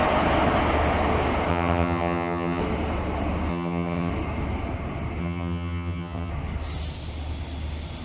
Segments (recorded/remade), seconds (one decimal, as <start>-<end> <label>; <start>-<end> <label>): 0.0-1.5 recorded; 1.5-2.6 remade; 2.6-3.5 recorded; 3.5-4.1 remade; 4.1-5.2 recorded; 5.2-6.3 remade; 6.3-8.0 recorded